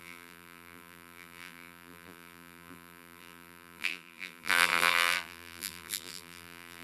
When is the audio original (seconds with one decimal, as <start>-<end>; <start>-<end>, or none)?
none